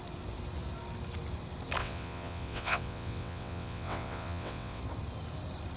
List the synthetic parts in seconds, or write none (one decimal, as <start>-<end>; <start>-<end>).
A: 1.8-4.8